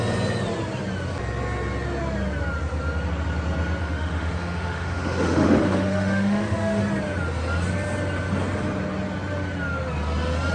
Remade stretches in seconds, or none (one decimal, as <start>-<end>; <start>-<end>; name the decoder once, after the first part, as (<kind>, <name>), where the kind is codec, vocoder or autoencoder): 3.8-6.8 (autoencoder, DAC-VAE)